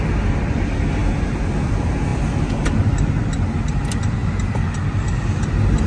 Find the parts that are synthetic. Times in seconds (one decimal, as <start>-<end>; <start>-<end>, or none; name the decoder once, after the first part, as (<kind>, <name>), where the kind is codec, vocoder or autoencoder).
2.1-2.7 (vocoder, BigVGAN v2); 4.2-5.0